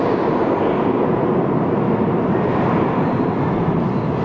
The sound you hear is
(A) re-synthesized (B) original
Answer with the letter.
B